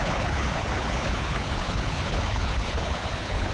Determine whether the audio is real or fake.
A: fake